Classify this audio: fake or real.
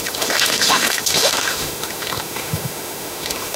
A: fake